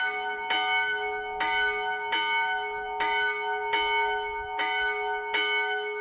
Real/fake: real